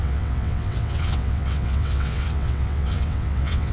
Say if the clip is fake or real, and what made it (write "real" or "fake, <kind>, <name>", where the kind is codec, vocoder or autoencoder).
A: fake, vocoder, WaveNeXt